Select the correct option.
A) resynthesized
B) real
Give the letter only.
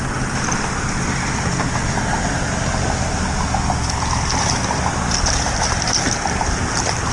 B